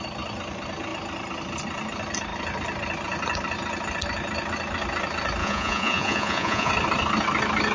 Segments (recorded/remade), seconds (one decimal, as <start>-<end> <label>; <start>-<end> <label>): 0.0-5.4 recorded; 5.4-6.7 remade; 6.7-7.7 recorded